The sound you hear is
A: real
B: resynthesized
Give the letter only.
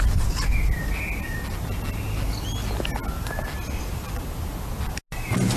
A